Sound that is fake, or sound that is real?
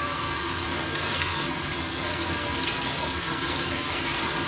fake